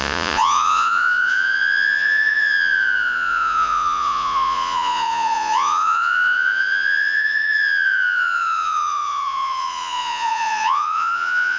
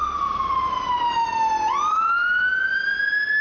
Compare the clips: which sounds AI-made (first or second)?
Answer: first